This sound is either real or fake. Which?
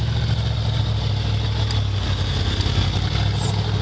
real